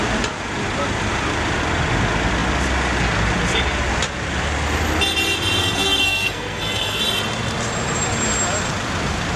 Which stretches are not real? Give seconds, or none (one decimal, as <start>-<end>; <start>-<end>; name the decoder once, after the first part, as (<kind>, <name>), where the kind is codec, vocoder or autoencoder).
5.6-7.0 (codec, SNAC)